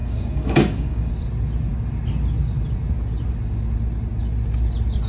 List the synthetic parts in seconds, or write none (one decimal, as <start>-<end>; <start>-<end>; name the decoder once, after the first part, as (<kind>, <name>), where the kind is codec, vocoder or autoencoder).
0.0-1.1 (codec, DAC)